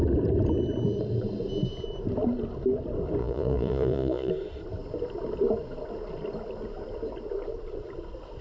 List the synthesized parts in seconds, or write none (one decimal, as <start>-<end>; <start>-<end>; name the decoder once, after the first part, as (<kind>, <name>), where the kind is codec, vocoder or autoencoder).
3.2-4.3 (vocoder, Vocos)